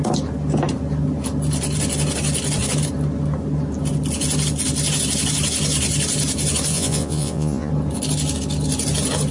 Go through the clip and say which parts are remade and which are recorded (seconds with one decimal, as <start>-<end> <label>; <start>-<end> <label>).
0.0-6.7 recorded; 6.7-7.7 remade; 7.7-9.3 recorded